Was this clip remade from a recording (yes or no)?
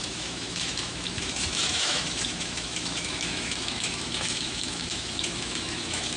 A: yes